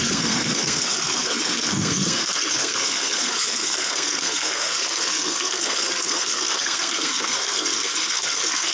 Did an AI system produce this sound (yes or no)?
yes